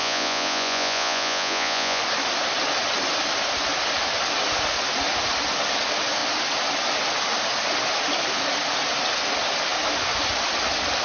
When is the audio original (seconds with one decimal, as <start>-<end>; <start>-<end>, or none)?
2.0-11.0